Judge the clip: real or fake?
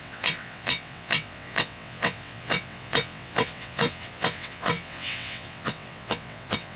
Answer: fake